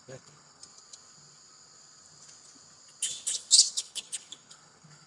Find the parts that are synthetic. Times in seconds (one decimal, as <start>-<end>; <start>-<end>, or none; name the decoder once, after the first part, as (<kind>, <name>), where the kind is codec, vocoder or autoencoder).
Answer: 0.0-0.6 (codec, HILCodec); 3.7-5.1